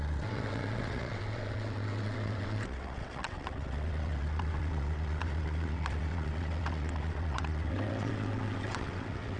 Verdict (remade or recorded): remade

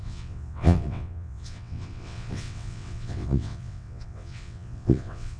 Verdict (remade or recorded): remade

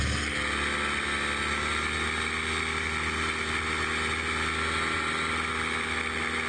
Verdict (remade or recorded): recorded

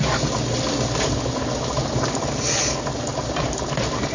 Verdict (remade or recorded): recorded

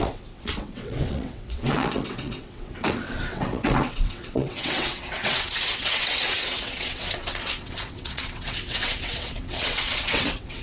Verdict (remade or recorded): remade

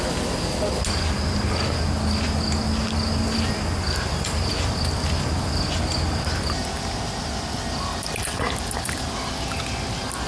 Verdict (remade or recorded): recorded